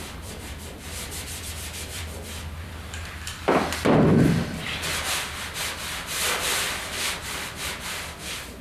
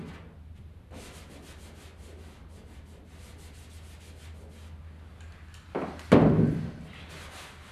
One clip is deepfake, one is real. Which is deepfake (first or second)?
first